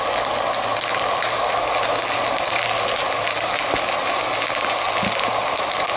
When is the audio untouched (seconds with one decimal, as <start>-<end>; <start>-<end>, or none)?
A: 0.0-6.0